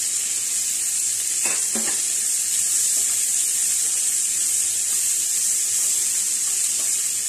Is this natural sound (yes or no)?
yes